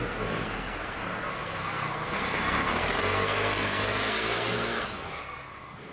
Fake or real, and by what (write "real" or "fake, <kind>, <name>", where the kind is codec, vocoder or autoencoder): fake, codec, SNAC